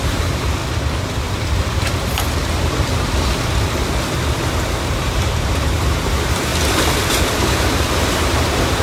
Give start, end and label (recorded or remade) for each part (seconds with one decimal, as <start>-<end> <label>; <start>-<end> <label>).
0.0-0.6 remade; 0.6-4.8 recorded; 4.8-6.5 remade; 6.5-7.1 recorded; 7.1-8.8 remade